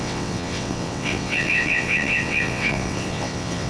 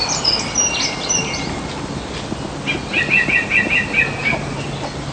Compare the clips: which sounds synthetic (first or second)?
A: first